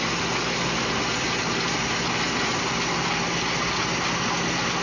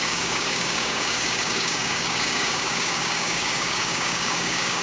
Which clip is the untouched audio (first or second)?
first